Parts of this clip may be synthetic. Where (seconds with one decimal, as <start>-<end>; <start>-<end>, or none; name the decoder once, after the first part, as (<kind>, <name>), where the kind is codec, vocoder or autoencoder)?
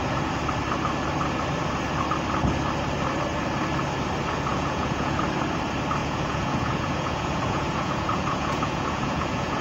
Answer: 4.5-5.2 (vocoder, Vocos); 6.0-9.6